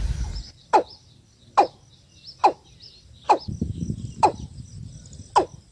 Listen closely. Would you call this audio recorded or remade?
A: recorded